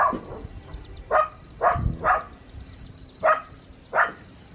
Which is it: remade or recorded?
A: recorded